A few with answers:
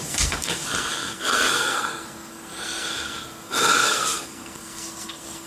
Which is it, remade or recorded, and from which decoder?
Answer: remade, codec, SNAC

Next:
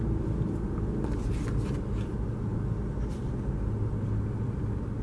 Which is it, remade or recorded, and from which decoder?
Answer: recorded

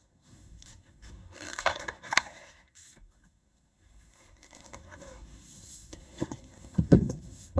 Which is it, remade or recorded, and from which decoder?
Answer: remade, codec, SNAC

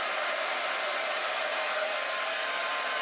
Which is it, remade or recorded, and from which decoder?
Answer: recorded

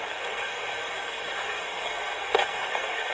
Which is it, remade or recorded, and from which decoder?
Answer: remade, codec, SNAC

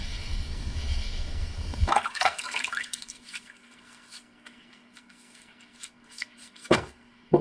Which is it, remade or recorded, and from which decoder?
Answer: remade, codec, SNAC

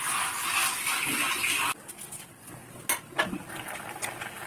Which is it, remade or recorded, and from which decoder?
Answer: recorded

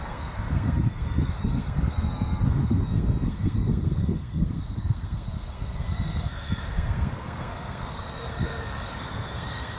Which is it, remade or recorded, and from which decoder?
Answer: remade, codec, SNAC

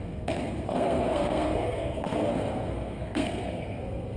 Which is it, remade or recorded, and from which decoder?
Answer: remade, codec, SNAC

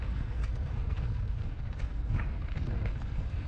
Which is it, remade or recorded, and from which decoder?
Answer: remade, codec, SNAC